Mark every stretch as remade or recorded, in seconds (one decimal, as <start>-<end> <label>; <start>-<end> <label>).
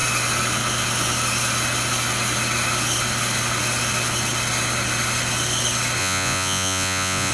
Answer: 0.0-6.0 recorded; 6.0-7.3 remade